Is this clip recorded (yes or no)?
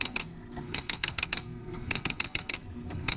no